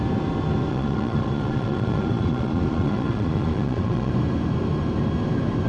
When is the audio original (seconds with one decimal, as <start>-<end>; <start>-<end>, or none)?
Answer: 0.0-0.7; 4.1-5.7